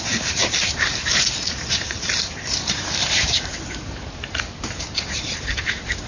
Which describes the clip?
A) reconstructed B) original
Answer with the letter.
A